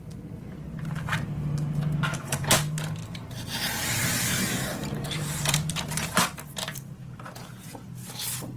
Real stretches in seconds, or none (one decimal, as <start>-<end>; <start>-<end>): 0.0-3.0; 8.1-8.6